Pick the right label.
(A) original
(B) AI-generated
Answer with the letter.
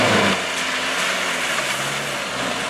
A